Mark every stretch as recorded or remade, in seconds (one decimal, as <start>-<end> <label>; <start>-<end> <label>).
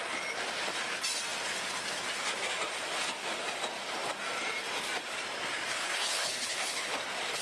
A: 0.0-5.7 recorded; 5.7-7.0 remade; 7.0-7.4 recorded